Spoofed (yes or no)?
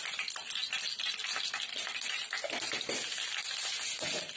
no